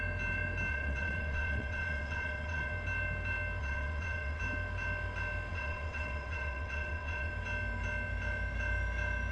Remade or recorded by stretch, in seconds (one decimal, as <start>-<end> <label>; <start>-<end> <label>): 0.0-0.7 recorded; 0.7-2.7 remade; 2.7-3.6 recorded; 3.6-4.4 remade; 4.4-5.5 recorded; 5.5-7.3 remade; 7.3-9.3 recorded

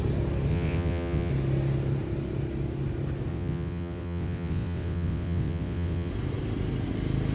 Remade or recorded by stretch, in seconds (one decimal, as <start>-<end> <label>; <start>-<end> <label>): 0.0-0.5 recorded; 0.5-1.3 remade; 1.3-3.3 recorded; 3.3-6.1 remade; 6.1-7.3 recorded

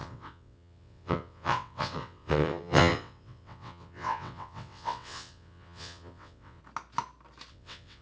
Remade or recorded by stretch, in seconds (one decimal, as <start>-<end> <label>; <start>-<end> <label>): 0.0-6.6 remade; 6.6-7.5 recorded; 7.5-8.0 remade

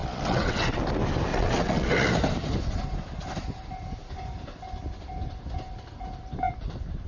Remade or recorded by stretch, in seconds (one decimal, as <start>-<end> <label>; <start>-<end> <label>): 0.0-0.8 remade; 0.8-1.3 recorded; 1.3-2.1 remade; 2.1-7.1 recorded

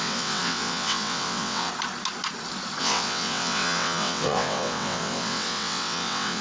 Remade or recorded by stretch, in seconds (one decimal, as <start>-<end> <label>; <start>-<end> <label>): 0.0-1.7 remade; 1.7-2.8 recorded; 2.8-6.4 remade